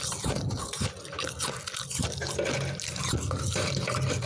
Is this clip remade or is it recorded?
recorded